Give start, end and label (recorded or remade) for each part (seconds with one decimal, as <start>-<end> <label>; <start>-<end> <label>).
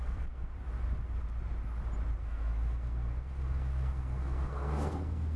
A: 0.0-0.5 remade; 0.5-2.2 recorded; 2.2-5.4 remade